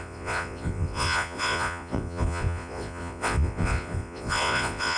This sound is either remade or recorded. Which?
remade